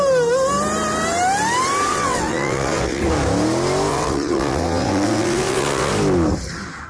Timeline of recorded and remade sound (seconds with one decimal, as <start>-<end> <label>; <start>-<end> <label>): 0.0-1.9 recorded; 1.9-3.0 remade; 3.0-3.9 recorded; 3.9-5.9 remade; 5.9-6.9 recorded